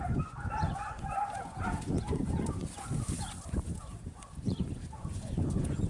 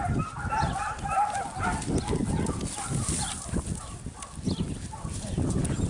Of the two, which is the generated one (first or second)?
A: first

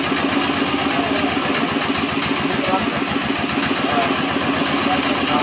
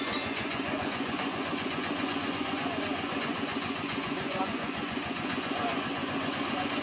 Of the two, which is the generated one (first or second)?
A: second